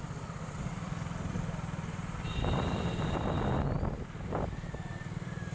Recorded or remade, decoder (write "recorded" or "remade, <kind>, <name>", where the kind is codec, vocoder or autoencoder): recorded